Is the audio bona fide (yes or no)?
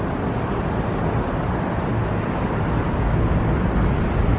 yes